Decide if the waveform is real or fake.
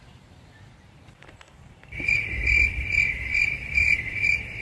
fake